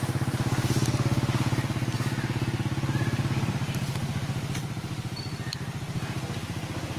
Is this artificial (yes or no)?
no